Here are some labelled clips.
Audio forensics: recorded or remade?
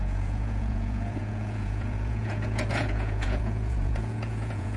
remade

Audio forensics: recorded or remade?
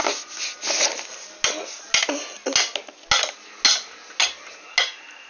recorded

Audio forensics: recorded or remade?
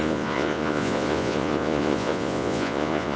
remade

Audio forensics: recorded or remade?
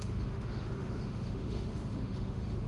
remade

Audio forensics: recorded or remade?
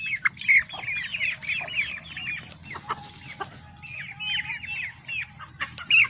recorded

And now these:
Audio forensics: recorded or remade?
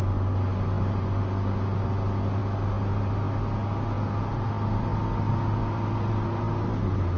recorded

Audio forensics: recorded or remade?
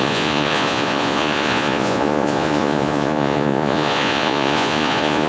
remade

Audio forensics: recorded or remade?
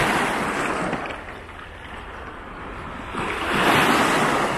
recorded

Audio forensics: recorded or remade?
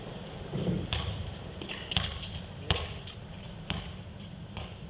recorded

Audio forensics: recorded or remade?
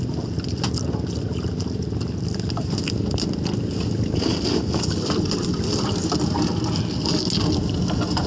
recorded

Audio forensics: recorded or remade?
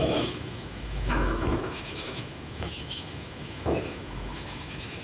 remade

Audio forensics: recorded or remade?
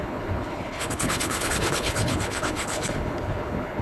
remade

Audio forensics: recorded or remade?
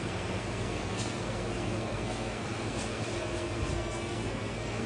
remade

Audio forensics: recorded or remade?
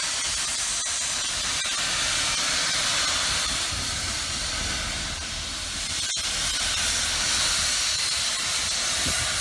recorded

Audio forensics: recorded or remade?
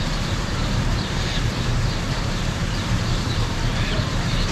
remade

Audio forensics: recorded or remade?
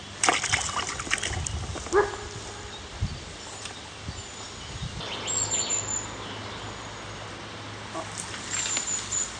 recorded